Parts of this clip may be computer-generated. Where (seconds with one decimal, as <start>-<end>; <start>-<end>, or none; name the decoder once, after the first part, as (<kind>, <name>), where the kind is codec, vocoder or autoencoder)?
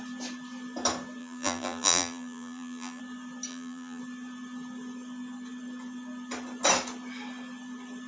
1.2-3.0 (vocoder, BigVGAN v2); 3.5-4.0